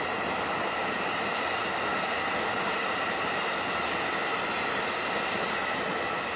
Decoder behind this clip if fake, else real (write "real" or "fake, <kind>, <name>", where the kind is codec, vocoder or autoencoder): real